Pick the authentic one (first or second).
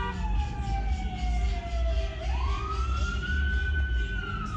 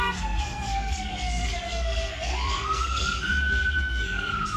first